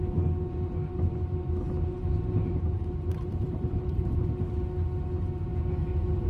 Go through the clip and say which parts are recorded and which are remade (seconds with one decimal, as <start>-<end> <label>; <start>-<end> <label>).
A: 0.0-2.0 recorded; 2.0-4.3 remade; 4.3-6.3 recorded